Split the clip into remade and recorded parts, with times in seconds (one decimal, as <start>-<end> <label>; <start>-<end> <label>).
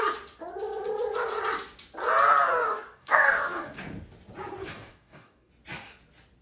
0.0-2.5 recorded; 2.5-3.8 remade; 3.8-4.6 recorded; 4.6-5.5 remade; 5.5-6.4 recorded